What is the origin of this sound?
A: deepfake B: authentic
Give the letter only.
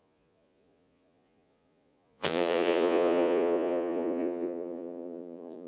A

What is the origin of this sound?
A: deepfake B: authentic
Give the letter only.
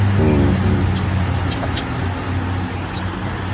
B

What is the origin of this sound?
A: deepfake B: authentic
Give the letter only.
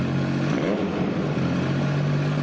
B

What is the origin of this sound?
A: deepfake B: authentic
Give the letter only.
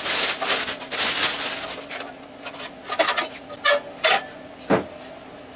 B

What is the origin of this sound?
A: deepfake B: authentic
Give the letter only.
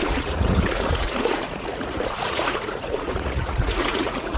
A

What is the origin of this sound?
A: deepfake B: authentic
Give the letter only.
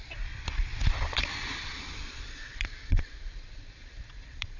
A